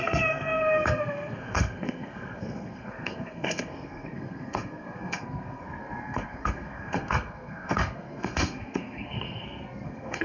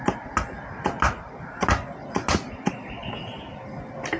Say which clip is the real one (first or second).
second